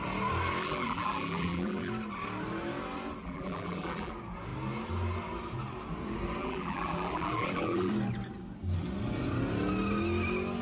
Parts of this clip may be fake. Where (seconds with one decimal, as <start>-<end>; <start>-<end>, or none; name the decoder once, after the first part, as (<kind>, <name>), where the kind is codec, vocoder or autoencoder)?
0.6-1.9 (vocoder, BigVGAN v2); 3.2-4.1; 6.4-7.9